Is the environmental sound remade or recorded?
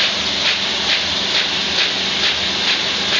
recorded